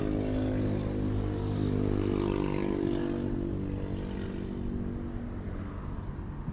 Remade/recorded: recorded